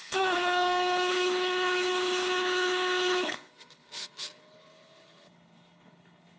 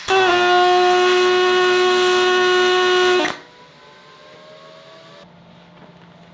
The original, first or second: second